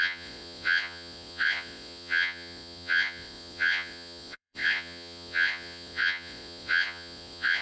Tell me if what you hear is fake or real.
fake